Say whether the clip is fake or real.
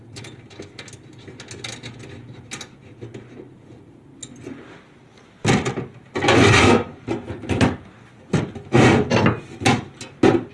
real